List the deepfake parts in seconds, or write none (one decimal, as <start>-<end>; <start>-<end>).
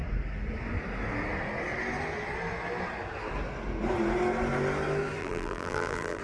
5.2-6.2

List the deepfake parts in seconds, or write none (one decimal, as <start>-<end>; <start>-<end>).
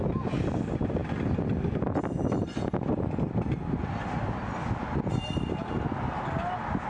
none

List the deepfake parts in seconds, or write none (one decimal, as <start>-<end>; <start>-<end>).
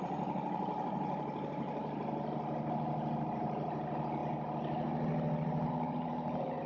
0.0-1.8; 3.3-4.2; 5.7-6.7